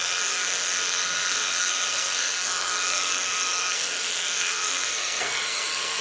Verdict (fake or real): fake